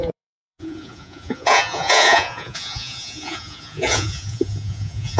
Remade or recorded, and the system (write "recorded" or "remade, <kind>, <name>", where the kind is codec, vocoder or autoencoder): remade, vocoder, Vocos